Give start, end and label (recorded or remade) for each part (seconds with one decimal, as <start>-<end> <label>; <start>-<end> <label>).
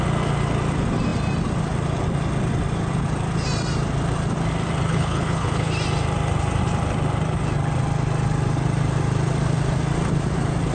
0.0-4.9 recorded; 4.9-5.7 remade; 5.7-10.7 recorded